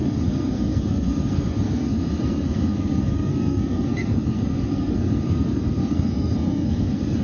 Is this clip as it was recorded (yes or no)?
no